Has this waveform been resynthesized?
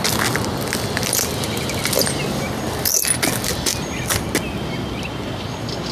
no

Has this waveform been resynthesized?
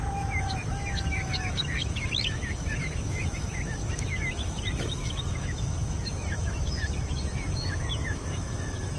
yes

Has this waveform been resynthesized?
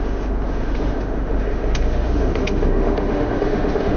yes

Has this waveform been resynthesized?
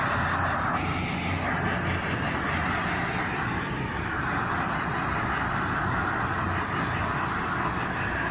no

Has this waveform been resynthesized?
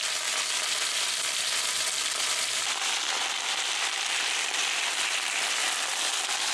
yes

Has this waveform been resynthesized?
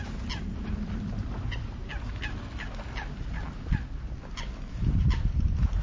no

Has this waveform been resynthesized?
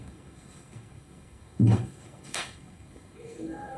yes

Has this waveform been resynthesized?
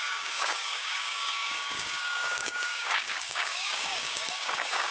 yes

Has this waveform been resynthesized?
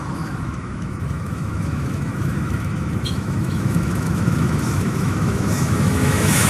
yes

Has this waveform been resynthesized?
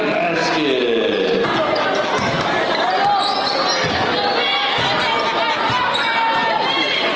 no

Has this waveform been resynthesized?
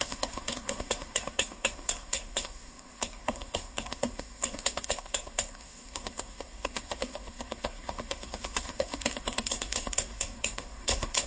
yes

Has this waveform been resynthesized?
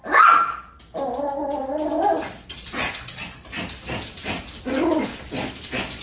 no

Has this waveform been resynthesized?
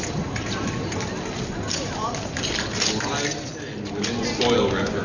no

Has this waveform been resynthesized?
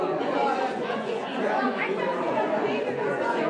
yes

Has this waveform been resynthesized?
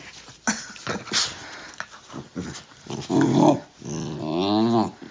no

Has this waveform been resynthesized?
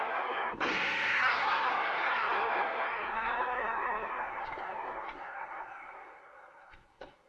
yes